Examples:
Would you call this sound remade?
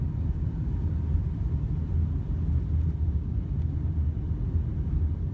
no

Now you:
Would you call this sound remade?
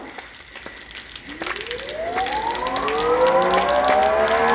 no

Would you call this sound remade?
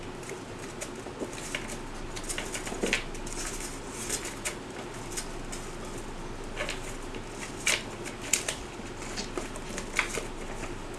no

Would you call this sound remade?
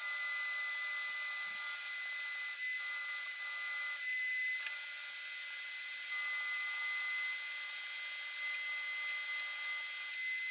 no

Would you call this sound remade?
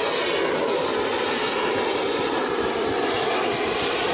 no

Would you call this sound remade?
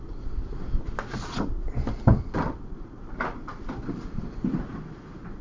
yes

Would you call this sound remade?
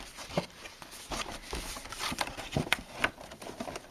no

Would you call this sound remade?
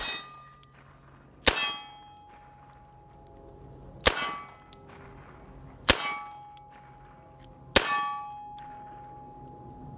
no